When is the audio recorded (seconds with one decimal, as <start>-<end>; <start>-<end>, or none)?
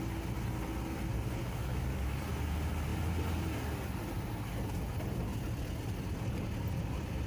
0.0-1.4; 2.3-7.3